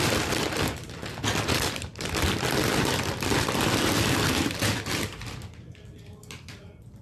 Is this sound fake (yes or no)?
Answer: yes